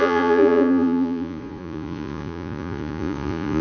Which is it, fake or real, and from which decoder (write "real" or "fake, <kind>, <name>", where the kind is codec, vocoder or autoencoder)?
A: fake, vocoder, Vocos